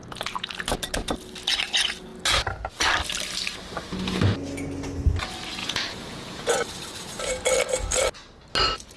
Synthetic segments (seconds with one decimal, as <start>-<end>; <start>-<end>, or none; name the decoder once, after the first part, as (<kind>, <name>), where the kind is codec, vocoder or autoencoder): 5.6-6.6 (vocoder, Vocos)